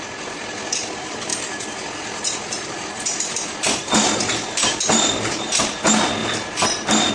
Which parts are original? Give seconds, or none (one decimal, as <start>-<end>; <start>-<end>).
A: 0.0-3.8; 5.7-7.1